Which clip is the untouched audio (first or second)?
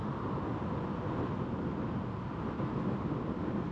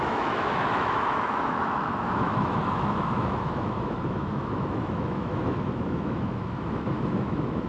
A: first